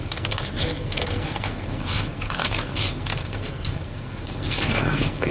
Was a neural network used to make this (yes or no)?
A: yes